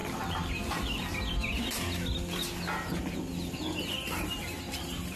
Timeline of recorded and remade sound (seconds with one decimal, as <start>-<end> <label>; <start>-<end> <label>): 0.0-0.5 recorded; 0.5-1.1 remade; 1.1-4.2 recorded; 4.2-5.2 remade